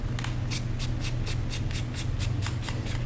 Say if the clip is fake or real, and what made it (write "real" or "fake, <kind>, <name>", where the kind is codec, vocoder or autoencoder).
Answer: real